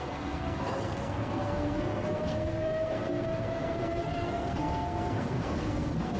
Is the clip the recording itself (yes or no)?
no